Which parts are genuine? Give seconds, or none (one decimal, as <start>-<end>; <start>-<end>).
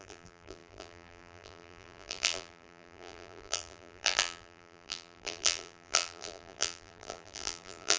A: none